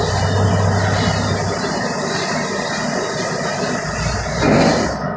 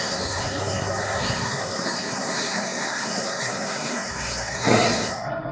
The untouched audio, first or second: first